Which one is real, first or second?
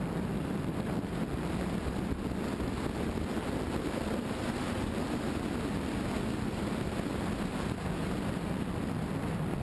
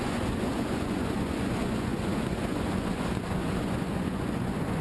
first